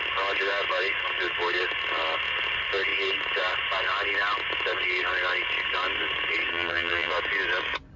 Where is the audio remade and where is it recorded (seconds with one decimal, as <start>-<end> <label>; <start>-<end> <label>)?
0.0-6.5 recorded; 6.5-7.1 remade; 7.1-8.0 recorded